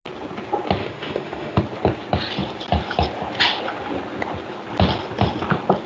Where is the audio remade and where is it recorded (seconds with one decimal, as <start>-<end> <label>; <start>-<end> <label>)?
0.0-0.8 recorded; 0.8-1.6 remade; 1.6-5.9 recorded